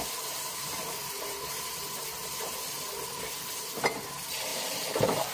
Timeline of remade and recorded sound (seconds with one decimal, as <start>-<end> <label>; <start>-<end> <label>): 0.0-4.5 recorded; 4.5-5.3 remade